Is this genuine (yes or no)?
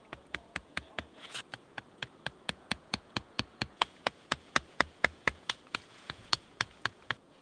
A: no